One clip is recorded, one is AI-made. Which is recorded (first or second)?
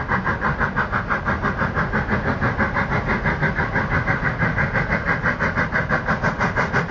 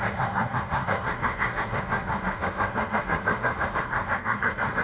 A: first